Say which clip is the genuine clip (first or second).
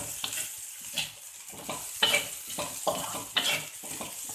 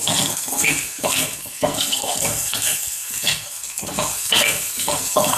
first